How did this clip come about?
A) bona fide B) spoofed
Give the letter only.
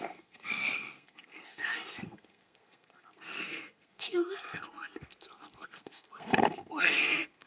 B